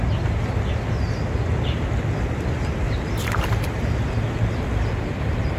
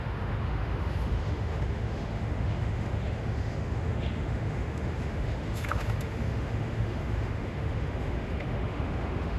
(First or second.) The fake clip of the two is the second